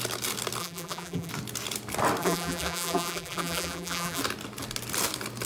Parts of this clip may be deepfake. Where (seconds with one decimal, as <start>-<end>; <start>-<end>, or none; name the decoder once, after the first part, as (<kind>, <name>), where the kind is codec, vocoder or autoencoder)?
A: 0.6-1.3 (vocoder, BigVGAN v2); 2.2-4.2